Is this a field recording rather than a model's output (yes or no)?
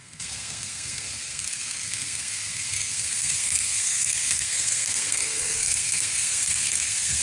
no